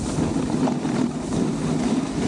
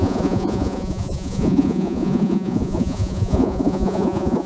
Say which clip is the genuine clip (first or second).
first